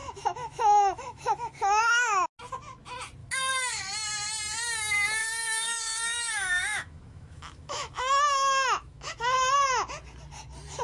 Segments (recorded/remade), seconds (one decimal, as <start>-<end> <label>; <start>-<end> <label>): 0.0-1.8 remade; 1.8-3.2 recorded; 3.2-3.8 remade; 3.8-5.2 recorded; 5.2-9.1 remade; 9.1-10.8 recorded

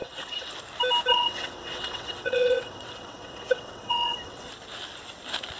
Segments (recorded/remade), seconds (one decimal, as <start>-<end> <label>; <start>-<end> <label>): 0.0-0.5 remade; 0.5-1.1 recorded; 1.1-4.5 remade; 4.5-5.6 recorded

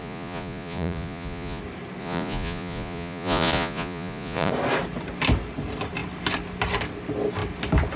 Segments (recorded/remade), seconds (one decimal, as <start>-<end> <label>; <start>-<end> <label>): 0.0-1.6 remade; 1.6-2.0 recorded; 2.0-4.5 remade; 4.5-8.0 recorded

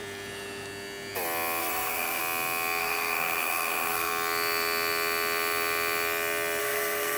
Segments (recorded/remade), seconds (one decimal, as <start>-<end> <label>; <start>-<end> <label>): 0.0-1.6 recorded; 1.6-2.2 remade; 2.2-2.8 recorded; 2.8-4.1 remade; 4.1-6.6 recorded; 6.6-7.2 remade

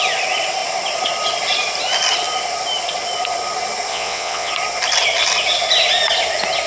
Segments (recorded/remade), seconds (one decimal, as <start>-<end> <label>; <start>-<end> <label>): 0.0-3.9 recorded; 3.9-4.5 remade; 4.5-6.7 recorded

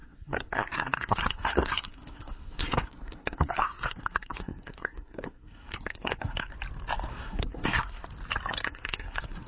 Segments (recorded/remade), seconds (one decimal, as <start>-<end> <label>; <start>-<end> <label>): 0.0-6.5 remade; 6.5-7.1 recorded; 7.1-8.0 remade; 8.0-8.5 recorded; 8.5-9.5 remade

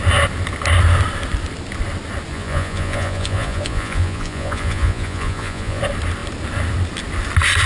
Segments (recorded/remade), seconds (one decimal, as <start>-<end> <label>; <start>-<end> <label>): 0.0-2.3 recorded; 2.3-5.8 remade; 5.8-7.7 recorded